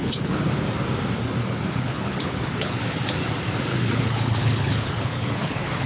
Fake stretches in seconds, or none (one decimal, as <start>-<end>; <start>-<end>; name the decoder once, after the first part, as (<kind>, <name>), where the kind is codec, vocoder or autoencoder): 0.0-0.6 (codec, HILCodec); 1.4-3.0; 3.7-5.9